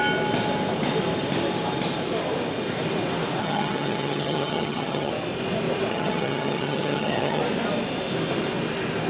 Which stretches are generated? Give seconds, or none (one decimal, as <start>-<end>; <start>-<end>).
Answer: 3.4-5.1; 5.9-7.4